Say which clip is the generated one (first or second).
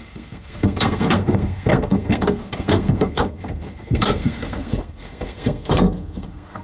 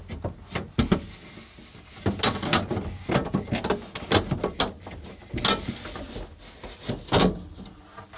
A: first